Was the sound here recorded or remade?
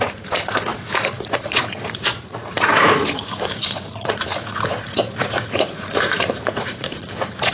remade